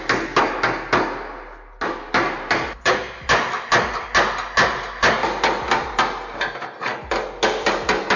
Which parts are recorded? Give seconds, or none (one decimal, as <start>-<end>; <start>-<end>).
0.0-8.2